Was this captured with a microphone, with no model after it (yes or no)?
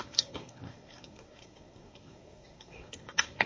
no